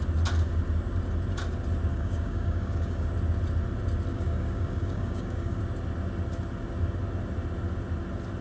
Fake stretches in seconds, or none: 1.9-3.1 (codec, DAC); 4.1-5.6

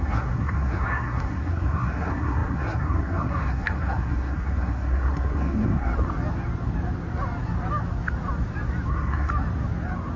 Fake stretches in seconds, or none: 0.0-5.9 (codec, SNAC); 8.9-9.3

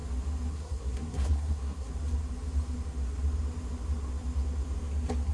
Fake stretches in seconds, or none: 0.5-1.9 (codec, SNAC)

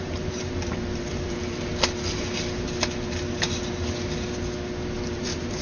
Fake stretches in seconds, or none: 0.0-1.7 (vocoder, BigVGAN v2); 5.1-5.6

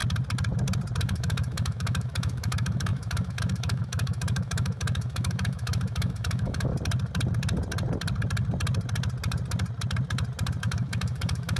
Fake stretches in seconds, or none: 1.0-6.7 (autoencoder, DAC-VAE); 10.6-11.6

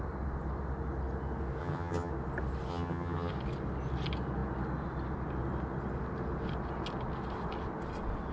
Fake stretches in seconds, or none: 1.6-2.1 (vocoder, HiFi-GAN); 2.7-3.3

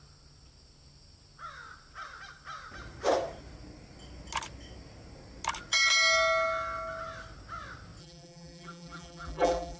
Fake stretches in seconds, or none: 8.0-9.8 (vocoder, BigVGAN v2)